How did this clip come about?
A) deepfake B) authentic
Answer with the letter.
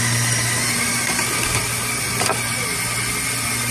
B